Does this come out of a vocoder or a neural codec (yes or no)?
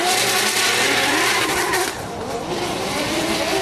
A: yes